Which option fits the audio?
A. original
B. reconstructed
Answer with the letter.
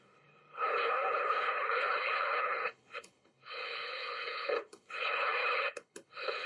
B